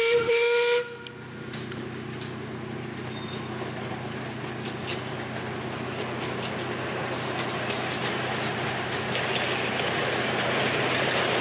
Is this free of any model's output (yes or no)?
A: yes